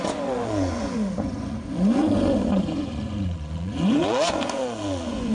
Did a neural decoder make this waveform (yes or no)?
yes